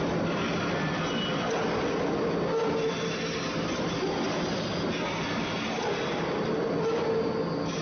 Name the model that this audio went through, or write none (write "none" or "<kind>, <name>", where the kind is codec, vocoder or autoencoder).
none